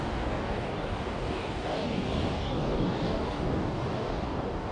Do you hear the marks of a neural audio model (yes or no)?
yes